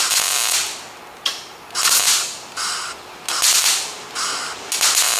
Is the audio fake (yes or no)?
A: no